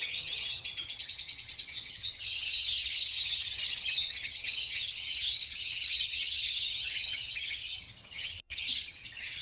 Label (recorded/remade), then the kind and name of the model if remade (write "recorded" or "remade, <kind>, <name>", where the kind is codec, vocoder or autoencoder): remade, vocoder, HiFi-GAN